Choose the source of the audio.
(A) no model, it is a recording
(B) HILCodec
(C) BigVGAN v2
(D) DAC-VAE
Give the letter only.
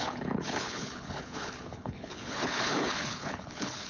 B